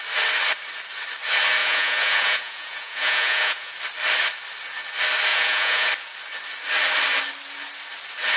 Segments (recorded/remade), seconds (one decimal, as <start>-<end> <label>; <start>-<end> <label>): 0.0-1.6 recorded; 1.6-3.8 remade; 3.8-5.3 recorded; 5.3-5.9 remade; 5.9-8.4 recorded

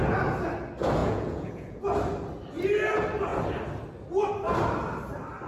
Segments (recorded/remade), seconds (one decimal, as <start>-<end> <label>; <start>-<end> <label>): 0.0-1.0 recorded; 1.0-1.8 remade; 1.8-5.5 recorded